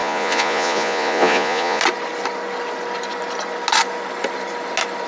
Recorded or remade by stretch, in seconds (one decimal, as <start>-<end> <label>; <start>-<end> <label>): 0.0-1.8 remade; 1.8-5.1 recorded